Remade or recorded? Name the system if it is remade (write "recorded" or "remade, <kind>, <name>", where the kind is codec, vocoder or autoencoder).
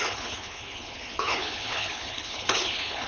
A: remade, codec, HILCodec